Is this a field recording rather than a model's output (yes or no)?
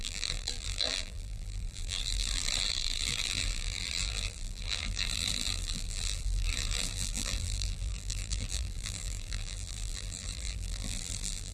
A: no